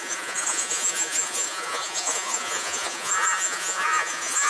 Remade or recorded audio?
remade